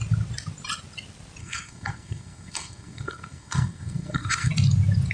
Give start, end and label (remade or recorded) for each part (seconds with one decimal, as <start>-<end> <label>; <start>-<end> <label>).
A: 0.0-1.4 recorded; 1.4-4.5 remade; 4.5-5.1 recorded